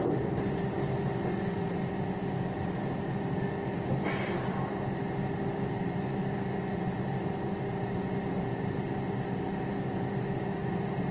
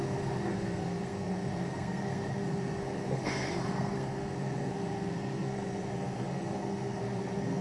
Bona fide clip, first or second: first